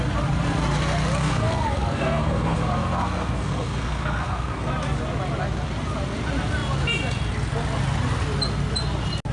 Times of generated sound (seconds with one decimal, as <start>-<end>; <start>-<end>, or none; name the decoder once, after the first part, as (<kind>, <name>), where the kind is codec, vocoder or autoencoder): 1.2-4.7 (codec, SNAC)

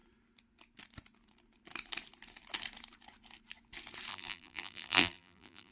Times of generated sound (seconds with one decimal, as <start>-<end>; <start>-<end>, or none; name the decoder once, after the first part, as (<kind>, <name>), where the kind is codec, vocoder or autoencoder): 4.1-5.7 (vocoder, BigVGAN v2)

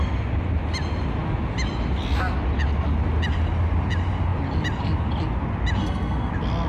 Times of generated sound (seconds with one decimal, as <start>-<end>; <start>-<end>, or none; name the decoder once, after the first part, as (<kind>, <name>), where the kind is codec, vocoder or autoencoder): 5.8-6.3 (codec, SNAC)